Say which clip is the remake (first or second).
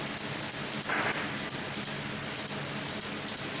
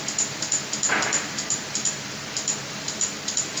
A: second